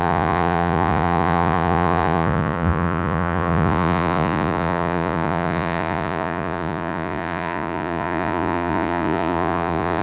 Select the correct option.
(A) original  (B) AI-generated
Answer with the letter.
B